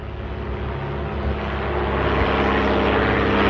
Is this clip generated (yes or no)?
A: no